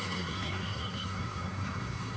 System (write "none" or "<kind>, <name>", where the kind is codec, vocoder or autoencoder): codec, SNAC